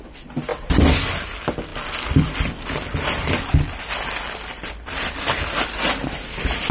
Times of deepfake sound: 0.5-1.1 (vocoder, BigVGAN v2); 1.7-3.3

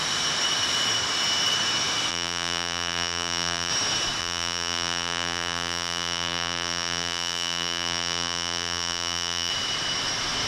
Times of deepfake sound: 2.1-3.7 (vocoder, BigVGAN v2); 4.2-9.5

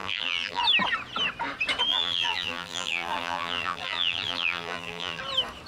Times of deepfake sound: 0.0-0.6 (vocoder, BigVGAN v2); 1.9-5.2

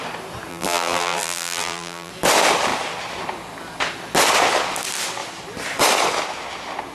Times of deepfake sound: 0.5-2.1 (vocoder, BigVGAN v2)

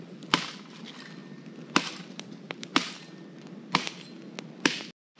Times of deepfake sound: 0.0-1.2 (vocoder, BigVGAN v2); 1.8-2.7; 4.5-5.2